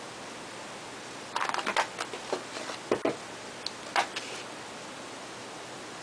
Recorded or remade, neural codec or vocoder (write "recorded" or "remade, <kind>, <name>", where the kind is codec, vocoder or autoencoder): recorded